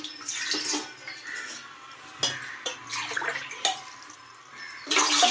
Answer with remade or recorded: recorded